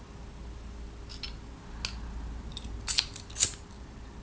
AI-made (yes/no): no